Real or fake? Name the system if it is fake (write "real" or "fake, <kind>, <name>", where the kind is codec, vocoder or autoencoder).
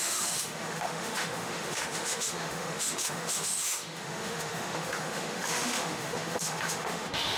fake, autoencoder, DAC-VAE